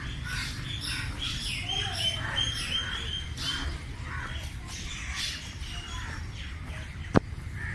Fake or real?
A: real